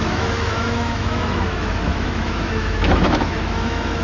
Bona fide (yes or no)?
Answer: no